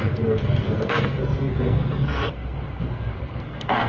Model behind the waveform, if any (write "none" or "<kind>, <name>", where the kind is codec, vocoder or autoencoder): codec, SNAC